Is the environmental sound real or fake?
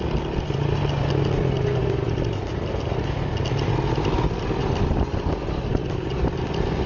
real